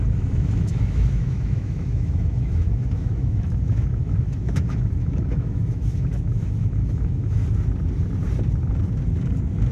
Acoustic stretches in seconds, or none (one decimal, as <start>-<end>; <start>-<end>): 7.4-9.7